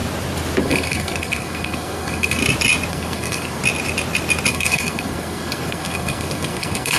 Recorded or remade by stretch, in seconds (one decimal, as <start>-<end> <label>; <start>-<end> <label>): 0.0-0.6 recorded; 0.6-2.4 remade; 2.4-2.9 recorded; 2.9-3.6 remade; 3.6-4.5 recorded; 4.5-7.0 remade